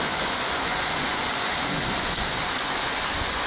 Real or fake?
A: fake